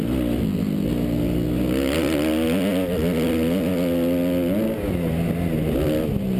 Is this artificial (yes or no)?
no